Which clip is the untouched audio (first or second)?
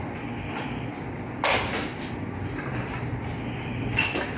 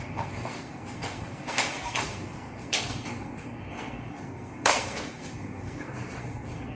first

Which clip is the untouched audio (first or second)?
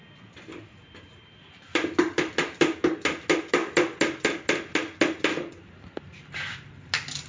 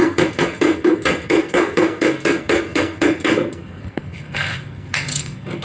first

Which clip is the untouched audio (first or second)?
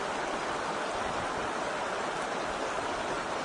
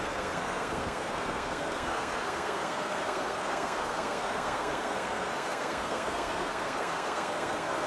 first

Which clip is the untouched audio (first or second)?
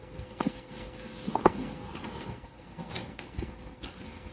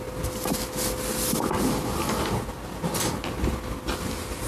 second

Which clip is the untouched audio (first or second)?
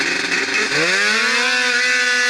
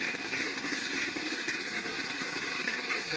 first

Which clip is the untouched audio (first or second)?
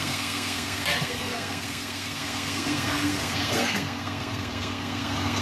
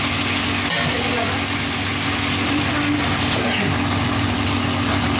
second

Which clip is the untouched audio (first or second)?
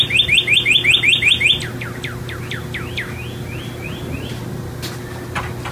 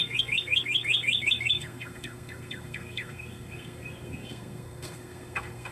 first